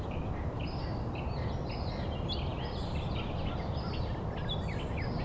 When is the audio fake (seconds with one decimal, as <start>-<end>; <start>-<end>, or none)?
none